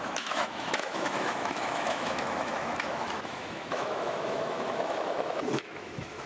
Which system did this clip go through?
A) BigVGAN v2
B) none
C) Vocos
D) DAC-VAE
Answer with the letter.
D